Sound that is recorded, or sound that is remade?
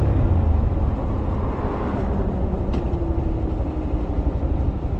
recorded